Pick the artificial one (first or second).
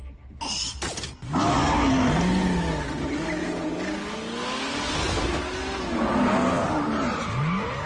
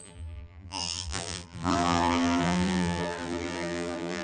second